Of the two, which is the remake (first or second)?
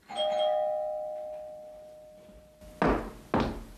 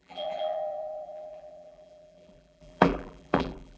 second